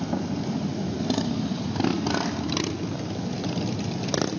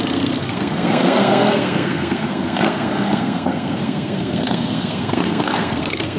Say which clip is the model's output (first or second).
second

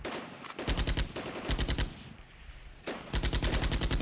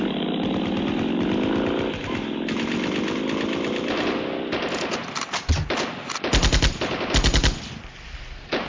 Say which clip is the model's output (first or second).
first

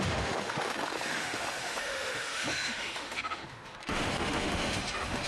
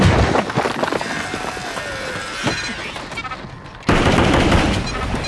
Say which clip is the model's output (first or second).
first